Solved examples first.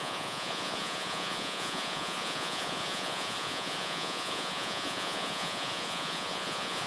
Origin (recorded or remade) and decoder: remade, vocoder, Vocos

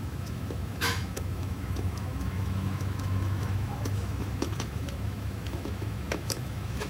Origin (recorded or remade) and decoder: remade, autoencoder, DAC-VAE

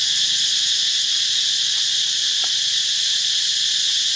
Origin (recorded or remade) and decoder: recorded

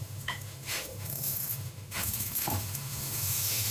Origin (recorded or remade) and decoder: remade, autoencoder, DAC-VAE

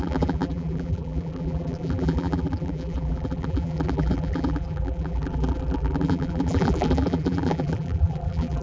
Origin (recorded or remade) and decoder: remade, vocoder, BigVGAN v2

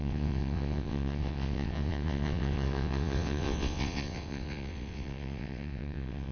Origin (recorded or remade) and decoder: remade, vocoder, WaveNeXt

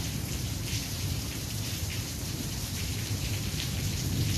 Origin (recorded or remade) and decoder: remade, vocoder, BigVGAN v2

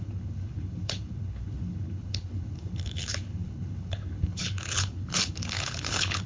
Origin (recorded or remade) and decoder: remade, codec, HILCodec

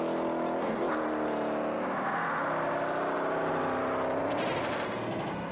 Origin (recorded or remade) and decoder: recorded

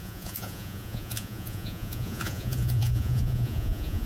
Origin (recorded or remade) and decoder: remade, vocoder, Vocos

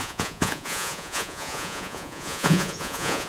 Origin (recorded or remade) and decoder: remade, vocoder, Vocos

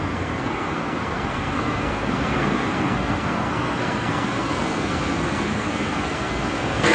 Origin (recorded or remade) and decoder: remade, codec, SNAC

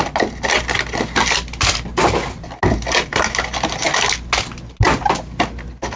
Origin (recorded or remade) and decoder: recorded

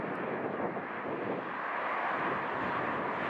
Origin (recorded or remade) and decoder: recorded